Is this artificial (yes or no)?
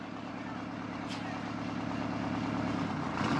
no